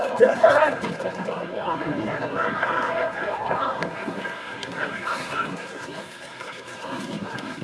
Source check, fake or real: fake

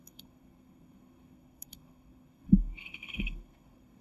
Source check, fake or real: fake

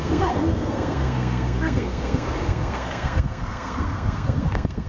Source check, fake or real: fake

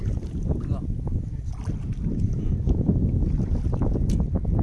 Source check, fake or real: real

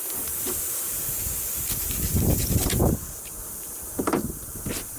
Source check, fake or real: real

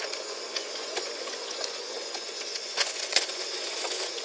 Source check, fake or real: fake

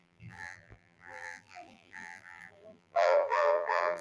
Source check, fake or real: fake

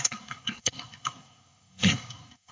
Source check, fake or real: fake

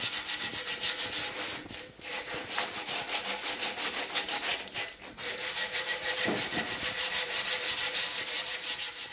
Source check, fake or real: real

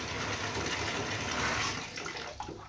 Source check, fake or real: real